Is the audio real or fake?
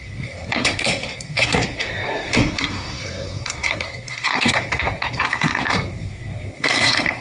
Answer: fake